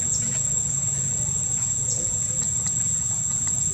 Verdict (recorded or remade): remade